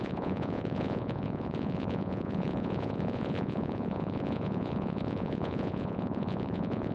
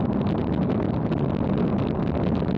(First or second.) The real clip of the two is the second